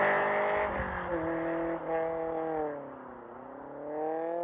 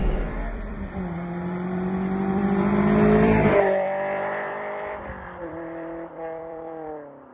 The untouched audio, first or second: first